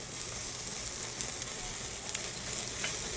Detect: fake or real real